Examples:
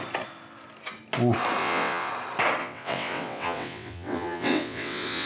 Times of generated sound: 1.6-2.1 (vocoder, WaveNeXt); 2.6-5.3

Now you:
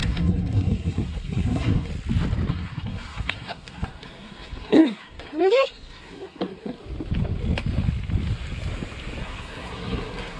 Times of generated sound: 0.0-1.9 (codec, SNAC); 2.5-6.8; 9.2-10.4

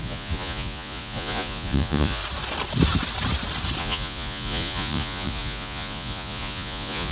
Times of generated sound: 0.0-2.2 (vocoder, Vocos); 3.8-7.1

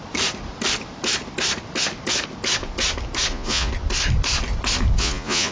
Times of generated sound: 3.3-3.7 (vocoder, Vocos); 5.0-5.5

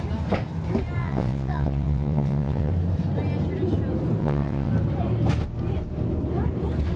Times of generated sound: 1.0-2.7 (vocoder, WaveNeXt); 4.2-4.7